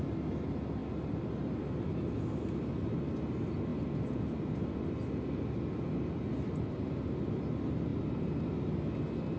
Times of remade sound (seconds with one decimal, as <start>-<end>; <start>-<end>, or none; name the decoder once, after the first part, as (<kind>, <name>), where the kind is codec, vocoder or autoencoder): none